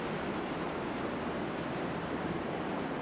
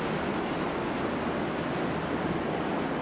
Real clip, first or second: second